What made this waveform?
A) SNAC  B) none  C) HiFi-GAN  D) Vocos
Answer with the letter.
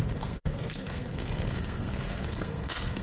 A